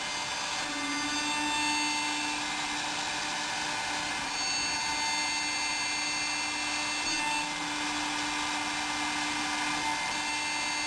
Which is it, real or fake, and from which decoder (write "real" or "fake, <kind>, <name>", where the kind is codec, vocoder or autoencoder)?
real